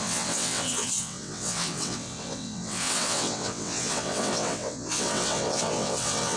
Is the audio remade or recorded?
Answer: remade